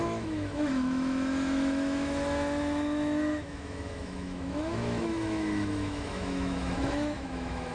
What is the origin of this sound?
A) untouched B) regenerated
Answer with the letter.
B